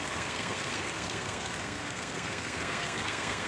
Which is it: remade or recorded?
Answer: remade